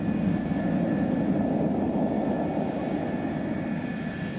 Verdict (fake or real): real